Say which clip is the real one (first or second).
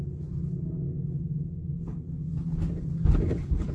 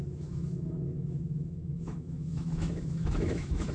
first